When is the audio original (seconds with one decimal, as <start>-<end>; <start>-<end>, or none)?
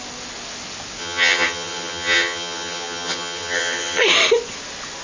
0.0-1.0; 4.0-5.0